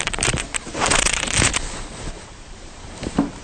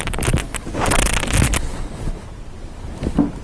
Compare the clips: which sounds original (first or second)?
second